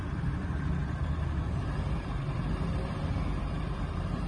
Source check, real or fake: fake